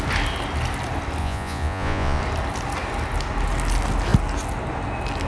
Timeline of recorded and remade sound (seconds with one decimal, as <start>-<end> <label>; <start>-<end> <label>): 0.0-1.2 recorded; 1.2-2.2 remade; 2.2-5.3 recorded